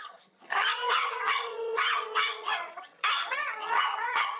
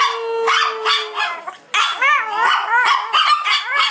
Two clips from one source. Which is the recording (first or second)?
second